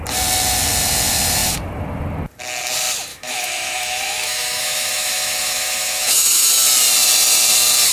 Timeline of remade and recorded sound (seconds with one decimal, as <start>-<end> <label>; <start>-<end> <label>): 0.0-3.1 recorded; 3.1-6.5 remade; 6.5-7.9 recorded